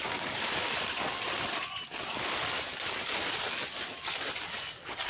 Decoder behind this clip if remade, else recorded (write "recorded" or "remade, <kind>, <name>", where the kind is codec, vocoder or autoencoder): remade, vocoder, BigVGAN v2